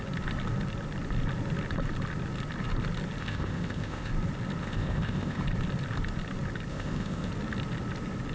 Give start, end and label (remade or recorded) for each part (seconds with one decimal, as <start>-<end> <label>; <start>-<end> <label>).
0.0-3.2 recorded; 3.2-4.1 remade; 4.1-4.6 recorded; 4.6-5.4 remade; 5.4-6.7 recorded; 6.7-7.3 remade; 7.3-8.3 recorded